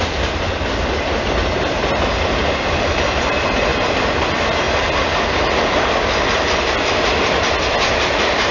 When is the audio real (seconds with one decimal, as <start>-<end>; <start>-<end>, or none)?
0.0-8.5